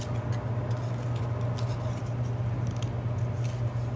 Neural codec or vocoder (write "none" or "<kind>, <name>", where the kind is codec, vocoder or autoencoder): none